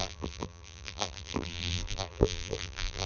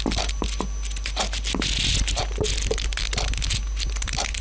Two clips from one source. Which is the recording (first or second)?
second